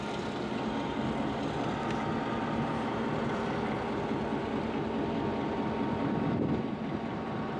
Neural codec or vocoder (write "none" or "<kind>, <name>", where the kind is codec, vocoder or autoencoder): none